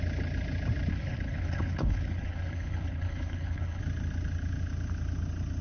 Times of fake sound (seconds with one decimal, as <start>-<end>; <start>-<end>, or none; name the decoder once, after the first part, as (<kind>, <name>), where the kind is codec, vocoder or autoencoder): 0.9-3.8 (codec, HILCodec)